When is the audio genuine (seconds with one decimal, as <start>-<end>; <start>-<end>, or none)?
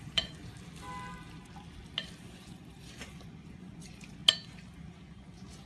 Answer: 0.4-2.2; 4.2-4.9